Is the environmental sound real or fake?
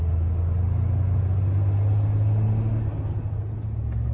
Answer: real